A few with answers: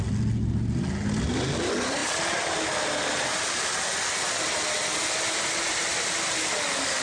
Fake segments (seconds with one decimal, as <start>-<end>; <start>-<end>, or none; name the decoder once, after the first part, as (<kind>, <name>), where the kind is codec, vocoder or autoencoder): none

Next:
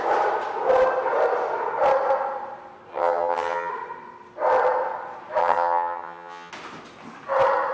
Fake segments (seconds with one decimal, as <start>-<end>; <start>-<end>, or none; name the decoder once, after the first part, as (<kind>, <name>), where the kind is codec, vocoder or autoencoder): 2.9-3.7 (vocoder, HiFi-GAN); 5.4-6.5

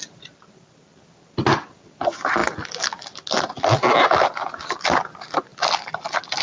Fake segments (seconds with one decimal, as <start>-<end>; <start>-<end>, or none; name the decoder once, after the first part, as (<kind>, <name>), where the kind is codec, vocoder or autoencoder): none